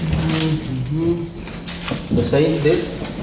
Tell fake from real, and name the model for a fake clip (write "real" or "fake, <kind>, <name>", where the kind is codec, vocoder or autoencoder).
real